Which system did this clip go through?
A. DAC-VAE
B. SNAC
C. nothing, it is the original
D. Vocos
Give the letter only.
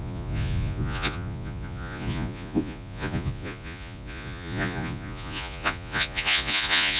D